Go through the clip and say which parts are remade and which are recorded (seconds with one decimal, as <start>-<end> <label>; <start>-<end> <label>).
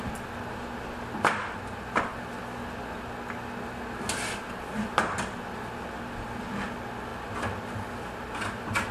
0.0-8.9 recorded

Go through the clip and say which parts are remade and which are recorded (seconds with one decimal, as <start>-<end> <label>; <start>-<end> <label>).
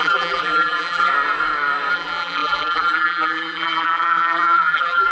0.0-1.1 remade; 1.1-1.9 recorded; 1.9-5.1 remade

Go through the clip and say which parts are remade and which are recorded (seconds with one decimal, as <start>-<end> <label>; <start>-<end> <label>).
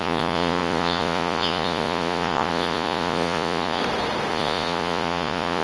0.0-3.8 remade; 3.8-4.3 recorded; 4.3-5.6 remade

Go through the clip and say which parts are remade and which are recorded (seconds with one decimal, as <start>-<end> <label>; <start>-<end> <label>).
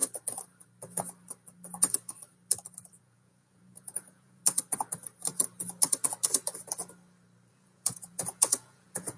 0.0-2.9 recorded; 2.9-4.4 remade; 4.4-7.5 recorded; 7.5-9.2 remade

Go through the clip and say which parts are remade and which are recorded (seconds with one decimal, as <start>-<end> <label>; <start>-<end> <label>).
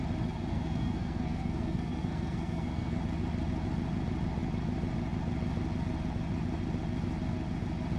0.0-0.5 recorded; 0.5-3.0 remade; 3.0-8.0 recorded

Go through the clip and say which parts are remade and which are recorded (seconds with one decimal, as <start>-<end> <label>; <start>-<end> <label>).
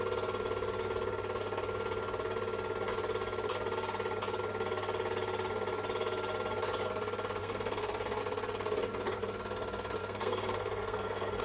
0.0-7.4 recorded; 7.4-8.2 remade; 8.2-10.0 recorded; 10.0-11.4 remade